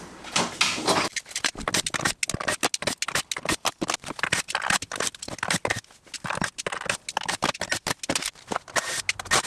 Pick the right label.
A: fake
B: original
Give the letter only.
B